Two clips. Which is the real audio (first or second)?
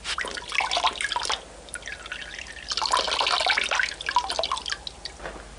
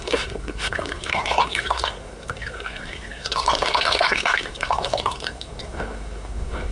first